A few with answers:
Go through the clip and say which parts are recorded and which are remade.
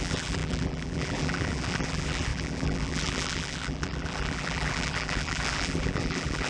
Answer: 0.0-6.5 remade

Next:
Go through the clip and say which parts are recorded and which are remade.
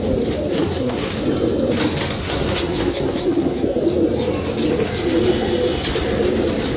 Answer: 0.0-0.5 recorded; 0.5-1.1 remade; 1.1-2.2 recorded; 2.2-3.8 remade; 3.8-6.8 recorded